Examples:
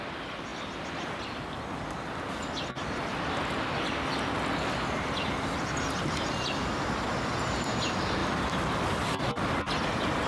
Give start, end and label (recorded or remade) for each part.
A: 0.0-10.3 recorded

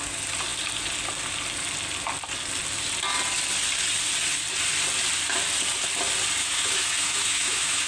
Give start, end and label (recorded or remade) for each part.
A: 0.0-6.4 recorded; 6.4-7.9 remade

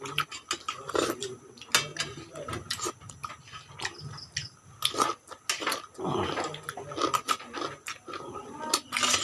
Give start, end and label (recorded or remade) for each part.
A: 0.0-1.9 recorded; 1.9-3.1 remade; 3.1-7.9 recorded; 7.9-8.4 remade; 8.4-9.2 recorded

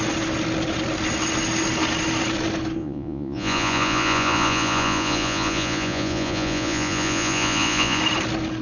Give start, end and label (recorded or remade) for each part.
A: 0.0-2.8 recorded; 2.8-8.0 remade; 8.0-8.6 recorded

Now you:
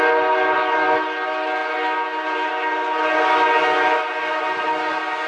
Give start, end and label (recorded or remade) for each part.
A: 0.0-5.3 recorded